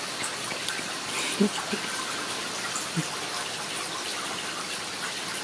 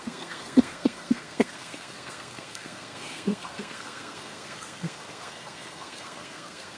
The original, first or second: first